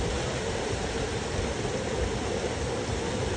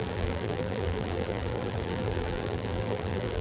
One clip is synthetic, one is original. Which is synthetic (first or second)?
second